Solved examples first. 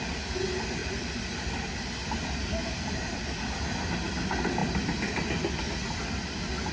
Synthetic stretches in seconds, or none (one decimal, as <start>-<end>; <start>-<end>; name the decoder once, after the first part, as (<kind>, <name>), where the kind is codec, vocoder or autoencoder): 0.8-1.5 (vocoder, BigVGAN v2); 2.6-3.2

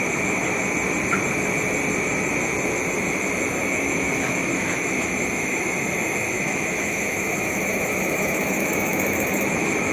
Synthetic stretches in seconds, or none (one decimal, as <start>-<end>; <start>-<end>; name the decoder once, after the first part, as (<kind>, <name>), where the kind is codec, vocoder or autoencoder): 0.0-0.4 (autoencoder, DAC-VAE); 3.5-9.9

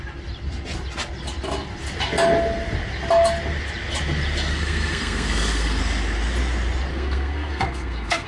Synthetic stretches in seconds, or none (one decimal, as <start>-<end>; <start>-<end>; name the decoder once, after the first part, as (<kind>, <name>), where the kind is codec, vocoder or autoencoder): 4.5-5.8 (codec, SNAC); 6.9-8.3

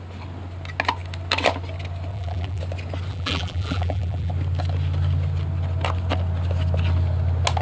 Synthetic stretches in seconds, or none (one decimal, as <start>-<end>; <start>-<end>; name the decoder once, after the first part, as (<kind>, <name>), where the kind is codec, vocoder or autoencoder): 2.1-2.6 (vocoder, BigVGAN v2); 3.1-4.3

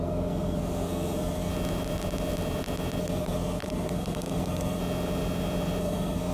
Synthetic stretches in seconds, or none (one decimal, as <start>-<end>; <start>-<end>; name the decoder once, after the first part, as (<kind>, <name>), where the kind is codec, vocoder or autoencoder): 0.0-1.5 (codec, SNAC); 3.0-4.8; 5.8-6.3

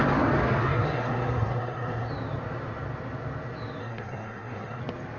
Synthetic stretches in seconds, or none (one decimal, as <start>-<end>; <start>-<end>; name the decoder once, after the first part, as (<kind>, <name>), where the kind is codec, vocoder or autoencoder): 0.6-2.1 (codec, SNAC); 3.8-4.8